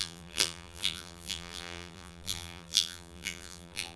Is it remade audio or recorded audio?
remade